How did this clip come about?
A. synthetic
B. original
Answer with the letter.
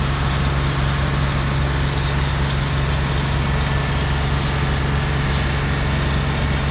B